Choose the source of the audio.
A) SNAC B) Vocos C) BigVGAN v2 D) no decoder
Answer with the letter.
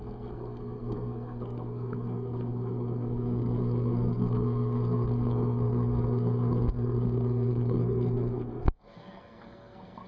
A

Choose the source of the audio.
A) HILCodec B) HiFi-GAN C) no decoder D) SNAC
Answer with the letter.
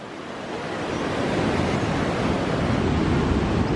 C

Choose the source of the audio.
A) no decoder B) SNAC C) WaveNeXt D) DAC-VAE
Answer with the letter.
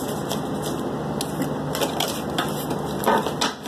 A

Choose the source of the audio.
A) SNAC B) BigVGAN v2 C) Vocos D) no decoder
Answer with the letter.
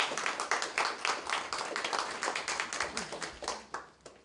D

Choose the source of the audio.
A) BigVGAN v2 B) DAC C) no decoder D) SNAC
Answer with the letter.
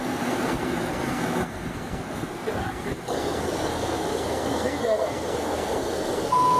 D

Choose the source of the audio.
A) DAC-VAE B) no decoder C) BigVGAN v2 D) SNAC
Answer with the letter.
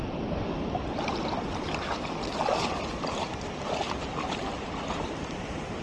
B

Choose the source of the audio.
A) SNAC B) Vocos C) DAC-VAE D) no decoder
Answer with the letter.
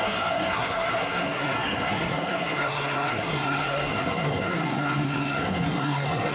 A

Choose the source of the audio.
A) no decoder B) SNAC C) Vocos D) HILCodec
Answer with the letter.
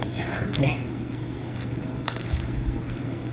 B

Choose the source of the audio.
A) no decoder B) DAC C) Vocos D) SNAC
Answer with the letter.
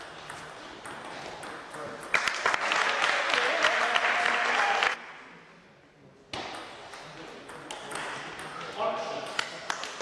A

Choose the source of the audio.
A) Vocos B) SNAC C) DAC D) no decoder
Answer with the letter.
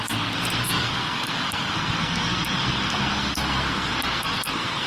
B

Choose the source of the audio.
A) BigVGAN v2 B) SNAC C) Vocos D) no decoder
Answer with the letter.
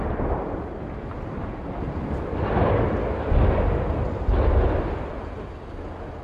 D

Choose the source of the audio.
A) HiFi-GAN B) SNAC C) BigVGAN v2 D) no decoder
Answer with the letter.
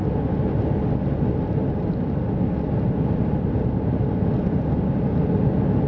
D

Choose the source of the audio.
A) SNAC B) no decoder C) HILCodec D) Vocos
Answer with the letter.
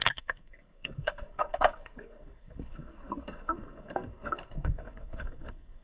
A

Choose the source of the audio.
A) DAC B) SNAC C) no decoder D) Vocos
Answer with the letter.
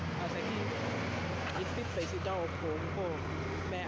C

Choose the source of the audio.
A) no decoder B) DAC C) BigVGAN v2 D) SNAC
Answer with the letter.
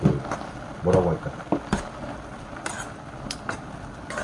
A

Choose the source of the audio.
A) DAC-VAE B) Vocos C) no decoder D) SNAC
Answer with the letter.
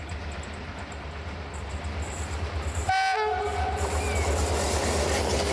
C